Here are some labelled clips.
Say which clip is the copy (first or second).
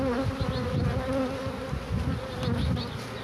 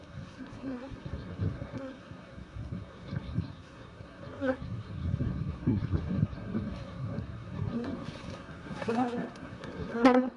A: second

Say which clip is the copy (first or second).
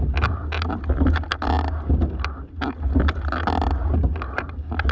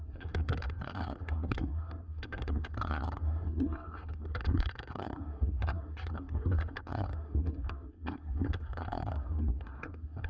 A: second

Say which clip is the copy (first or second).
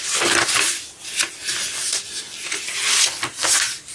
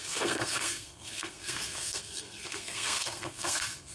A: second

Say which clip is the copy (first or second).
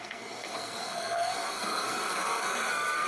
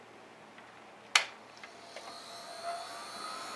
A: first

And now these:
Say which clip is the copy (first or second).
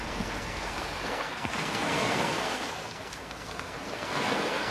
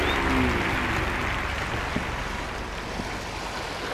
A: first